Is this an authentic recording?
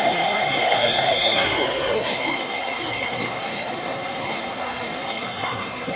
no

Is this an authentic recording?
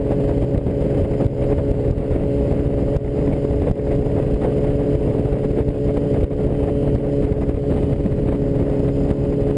yes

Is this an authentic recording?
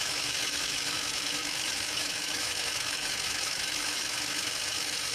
no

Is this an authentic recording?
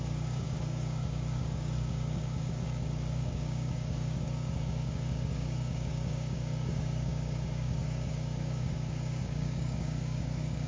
no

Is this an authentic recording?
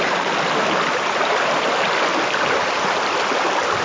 yes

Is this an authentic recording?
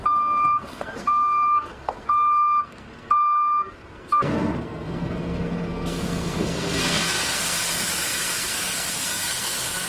no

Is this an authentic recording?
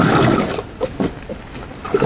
yes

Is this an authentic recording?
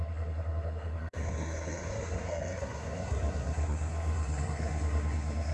no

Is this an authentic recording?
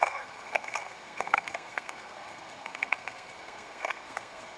no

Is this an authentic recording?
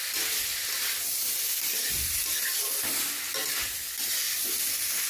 yes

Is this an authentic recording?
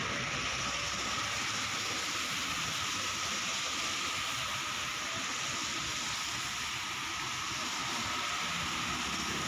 yes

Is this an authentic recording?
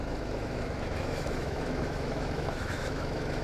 no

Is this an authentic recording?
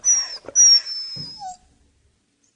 yes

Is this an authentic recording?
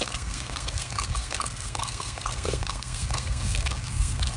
no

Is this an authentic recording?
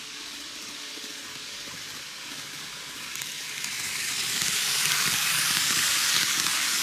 no